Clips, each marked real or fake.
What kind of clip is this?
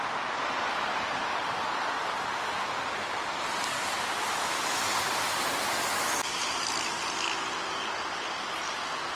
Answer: real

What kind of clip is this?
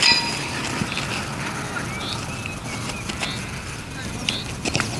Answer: real